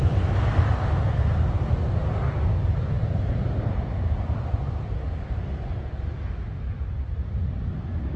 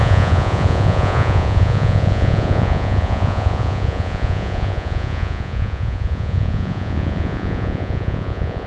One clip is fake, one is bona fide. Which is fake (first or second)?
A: second